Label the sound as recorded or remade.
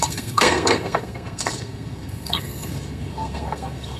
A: remade